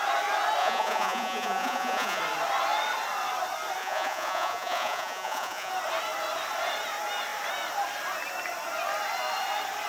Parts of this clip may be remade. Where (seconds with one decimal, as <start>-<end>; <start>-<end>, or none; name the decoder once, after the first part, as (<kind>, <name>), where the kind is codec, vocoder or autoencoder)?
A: 0.6-2.2 (vocoder, Vocos); 3.8-5.7